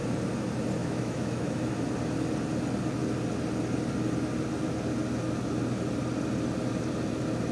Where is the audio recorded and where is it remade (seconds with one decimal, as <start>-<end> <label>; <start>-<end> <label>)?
0.0-0.8 recorded; 0.8-1.7 remade; 1.7-7.5 recorded